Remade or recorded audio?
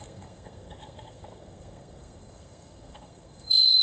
remade